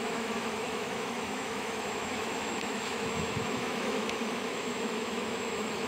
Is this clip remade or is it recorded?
remade